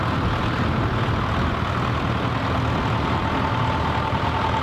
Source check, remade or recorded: recorded